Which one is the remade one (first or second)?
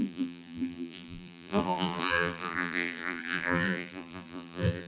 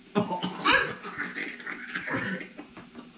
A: first